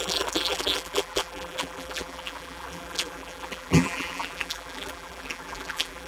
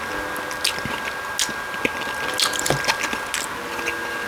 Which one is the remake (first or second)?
first